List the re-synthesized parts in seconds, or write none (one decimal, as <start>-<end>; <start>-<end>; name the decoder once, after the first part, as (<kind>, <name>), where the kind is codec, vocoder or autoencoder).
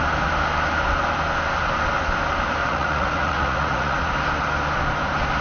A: 2.6-4.1 (vocoder, Vocos)